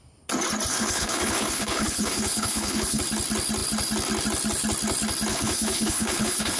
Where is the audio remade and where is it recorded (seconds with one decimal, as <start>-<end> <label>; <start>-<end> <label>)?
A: 0.0-0.7 recorded; 0.7-3.0 remade; 3.0-5.3 recorded; 5.3-6.6 remade

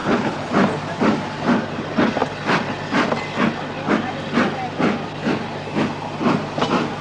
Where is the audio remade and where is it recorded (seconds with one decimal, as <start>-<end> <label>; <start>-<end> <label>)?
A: 0.0-0.5 remade; 0.5-7.0 recorded

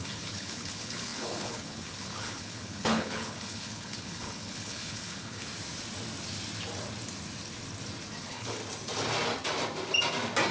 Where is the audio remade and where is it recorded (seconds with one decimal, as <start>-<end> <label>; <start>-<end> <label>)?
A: 0.0-5.5 remade; 5.5-8.2 recorded; 8.2-8.6 remade; 8.6-10.5 recorded

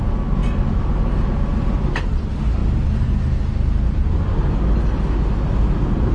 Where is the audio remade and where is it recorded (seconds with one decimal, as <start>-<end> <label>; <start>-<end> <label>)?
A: 0.0-6.1 recorded

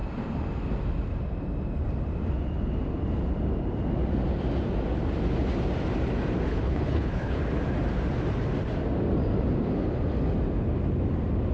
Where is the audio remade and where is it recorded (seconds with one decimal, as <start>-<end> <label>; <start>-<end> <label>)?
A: 0.0-6.5 recorded; 6.5-7.4 remade; 7.4-11.5 recorded

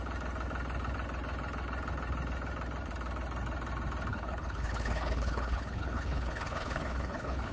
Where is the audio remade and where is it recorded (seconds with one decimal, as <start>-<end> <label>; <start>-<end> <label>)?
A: 0.0-4.1 recorded; 4.1-7.5 remade

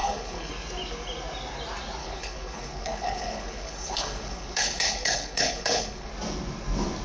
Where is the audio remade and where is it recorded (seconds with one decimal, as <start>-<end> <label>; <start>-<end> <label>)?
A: 0.0-0.5 remade; 0.5-2.0 recorded; 2.0-6.1 remade; 6.1-7.0 recorded

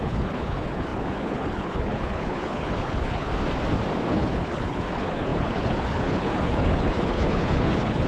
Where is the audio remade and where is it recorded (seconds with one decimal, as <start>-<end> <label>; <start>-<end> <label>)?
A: 0.0-3.3 remade; 3.3-4.1 recorded; 4.1-8.1 remade